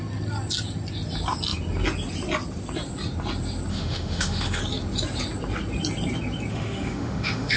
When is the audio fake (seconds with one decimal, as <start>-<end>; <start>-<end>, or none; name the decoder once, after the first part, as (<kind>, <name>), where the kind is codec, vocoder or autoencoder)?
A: 3.7-4.6 (autoencoder, DAC-VAE); 6.5-7.6